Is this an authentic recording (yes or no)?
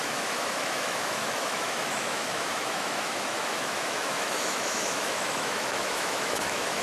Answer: no